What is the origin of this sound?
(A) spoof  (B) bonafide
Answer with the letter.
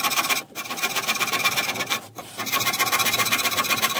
A